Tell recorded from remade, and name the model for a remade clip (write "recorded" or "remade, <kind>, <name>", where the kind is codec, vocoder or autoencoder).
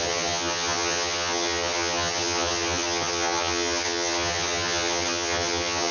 remade, vocoder, HiFi-GAN